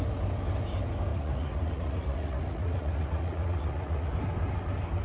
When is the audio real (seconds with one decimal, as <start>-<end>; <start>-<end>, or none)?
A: 0.0-1.1; 4.1-5.0